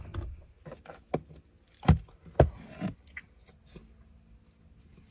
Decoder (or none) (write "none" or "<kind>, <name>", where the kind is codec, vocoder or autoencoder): none